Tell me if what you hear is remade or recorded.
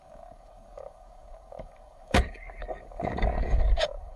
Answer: remade